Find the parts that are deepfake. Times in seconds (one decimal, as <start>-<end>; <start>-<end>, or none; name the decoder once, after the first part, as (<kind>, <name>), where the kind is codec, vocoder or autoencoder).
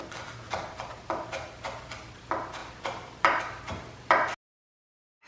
2.6-3.4 (vocoder, BigVGAN v2)